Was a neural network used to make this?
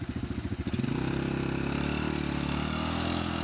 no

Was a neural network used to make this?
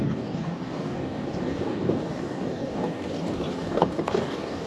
yes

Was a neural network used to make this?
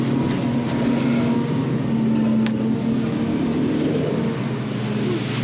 no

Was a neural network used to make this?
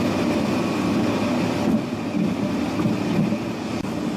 no